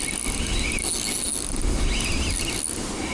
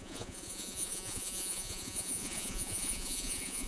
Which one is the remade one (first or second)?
second